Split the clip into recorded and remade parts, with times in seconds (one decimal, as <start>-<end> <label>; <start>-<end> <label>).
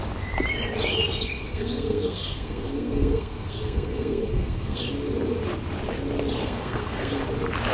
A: 0.0-1.0 recorded; 1.0-4.9 remade; 4.9-6.4 recorded; 6.4-7.2 remade; 7.2-7.7 recorded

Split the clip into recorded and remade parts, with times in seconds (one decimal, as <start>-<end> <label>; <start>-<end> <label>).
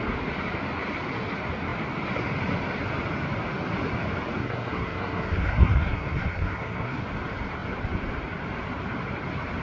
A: 0.0-4.4 recorded; 4.4-7.0 remade; 7.0-9.6 recorded